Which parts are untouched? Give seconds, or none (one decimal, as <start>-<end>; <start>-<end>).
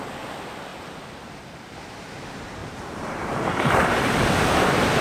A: 0.0-0.7; 2.0-2.6; 4.1-5.0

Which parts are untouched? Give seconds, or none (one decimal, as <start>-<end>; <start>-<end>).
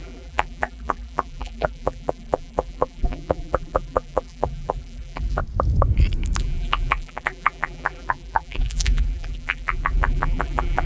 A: 5.4-6.4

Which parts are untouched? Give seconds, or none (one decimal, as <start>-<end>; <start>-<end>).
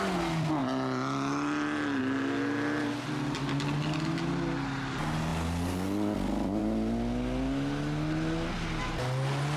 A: 0.0-9.6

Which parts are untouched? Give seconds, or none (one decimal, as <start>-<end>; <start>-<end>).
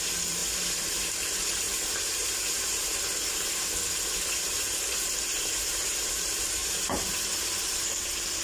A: 2.8-4.2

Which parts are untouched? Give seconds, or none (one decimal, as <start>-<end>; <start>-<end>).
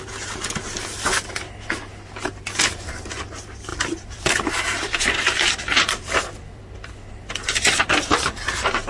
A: 0.0-3.7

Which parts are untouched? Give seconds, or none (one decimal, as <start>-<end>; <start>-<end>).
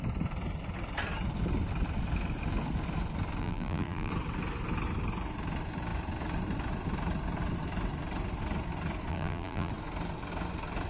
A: 0.0-3.4; 4.1-9.1; 9.7-10.9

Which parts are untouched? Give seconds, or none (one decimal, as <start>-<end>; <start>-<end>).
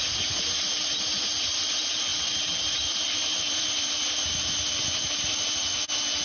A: 0.0-2.1; 5.8-6.2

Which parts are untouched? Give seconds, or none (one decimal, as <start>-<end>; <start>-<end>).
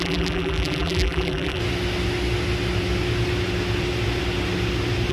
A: 1.6-5.1